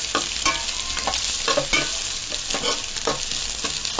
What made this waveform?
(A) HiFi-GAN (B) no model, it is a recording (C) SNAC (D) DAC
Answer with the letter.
B